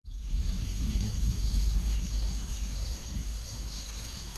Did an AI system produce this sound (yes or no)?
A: yes